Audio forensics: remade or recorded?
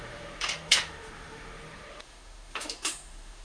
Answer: remade